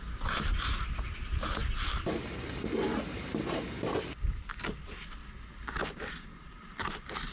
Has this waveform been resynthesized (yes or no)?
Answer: no